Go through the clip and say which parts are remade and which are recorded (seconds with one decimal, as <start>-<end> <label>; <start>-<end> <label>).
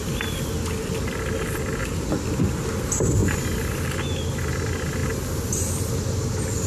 0.0-6.7 recorded